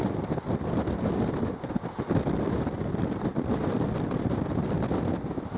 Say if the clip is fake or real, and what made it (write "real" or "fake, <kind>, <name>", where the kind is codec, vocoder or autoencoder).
fake, vocoder, BigVGAN v2